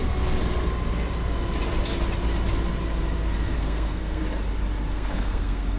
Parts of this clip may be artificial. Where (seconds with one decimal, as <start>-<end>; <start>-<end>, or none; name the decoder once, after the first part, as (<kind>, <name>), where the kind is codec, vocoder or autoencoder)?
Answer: 3.5-4.2 (codec, SNAC); 4.9-5.8